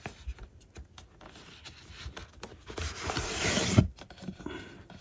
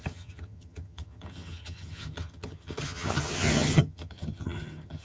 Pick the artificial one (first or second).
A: second